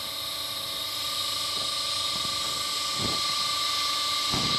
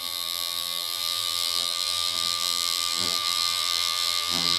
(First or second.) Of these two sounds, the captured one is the first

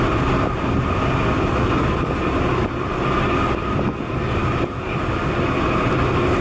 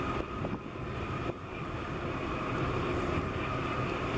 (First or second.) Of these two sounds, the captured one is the first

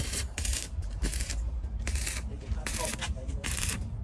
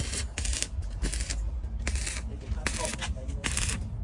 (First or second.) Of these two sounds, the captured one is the second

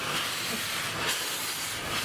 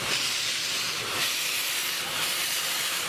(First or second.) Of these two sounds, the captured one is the first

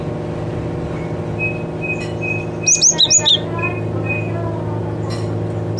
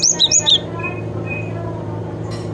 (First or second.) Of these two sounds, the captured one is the first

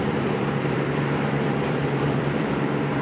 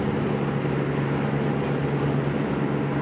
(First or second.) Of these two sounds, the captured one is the second